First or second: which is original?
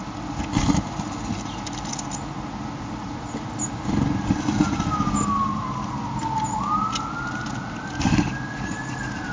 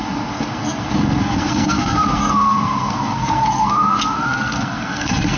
first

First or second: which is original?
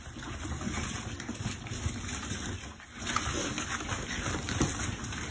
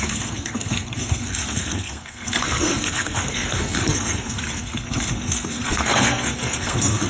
first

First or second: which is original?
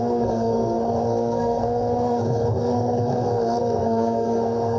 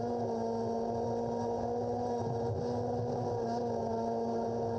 second